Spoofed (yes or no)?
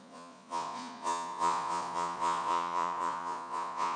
yes